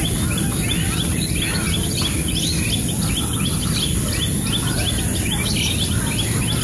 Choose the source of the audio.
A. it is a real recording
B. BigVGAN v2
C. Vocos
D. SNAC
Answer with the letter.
A